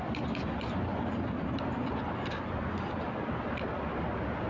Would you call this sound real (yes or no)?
yes